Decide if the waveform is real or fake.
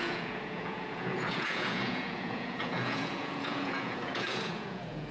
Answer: fake